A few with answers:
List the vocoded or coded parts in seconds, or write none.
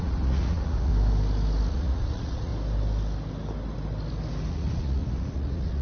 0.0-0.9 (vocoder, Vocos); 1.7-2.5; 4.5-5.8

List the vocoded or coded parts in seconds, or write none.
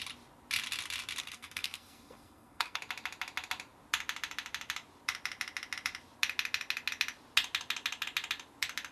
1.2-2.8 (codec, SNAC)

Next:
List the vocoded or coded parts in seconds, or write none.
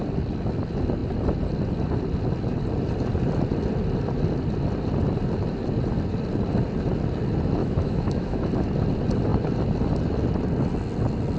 7.6-8.4 (autoencoder, DAC-VAE)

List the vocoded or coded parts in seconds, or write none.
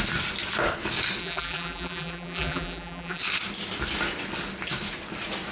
1.2-3.2 (vocoder, BigVGAN v2)